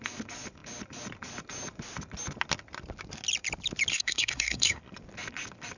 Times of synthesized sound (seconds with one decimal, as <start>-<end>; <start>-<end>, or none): 3.9-4.8